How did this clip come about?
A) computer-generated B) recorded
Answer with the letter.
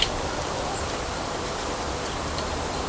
A